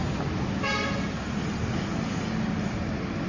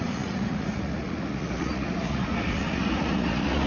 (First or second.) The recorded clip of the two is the first